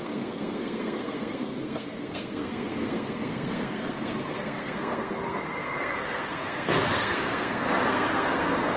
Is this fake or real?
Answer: fake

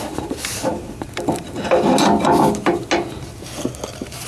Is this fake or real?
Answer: real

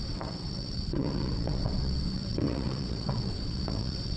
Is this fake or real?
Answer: fake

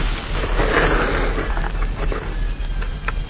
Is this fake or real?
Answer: real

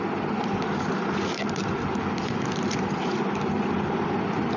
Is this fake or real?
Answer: real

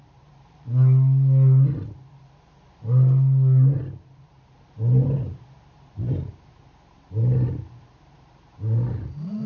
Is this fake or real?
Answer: real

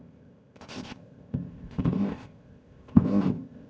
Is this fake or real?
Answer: fake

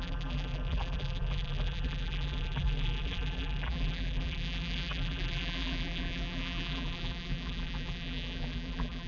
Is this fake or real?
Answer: fake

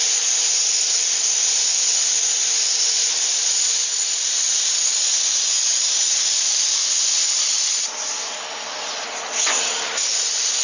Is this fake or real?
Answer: real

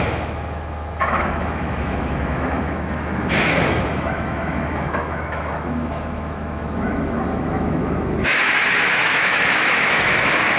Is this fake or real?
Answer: fake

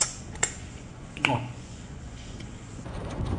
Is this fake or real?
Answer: fake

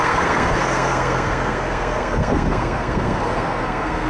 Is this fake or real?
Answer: fake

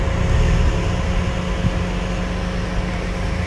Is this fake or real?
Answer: real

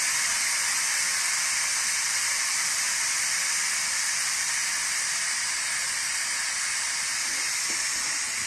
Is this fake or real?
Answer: fake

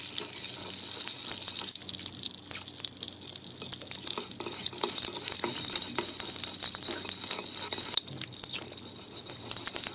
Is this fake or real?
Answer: real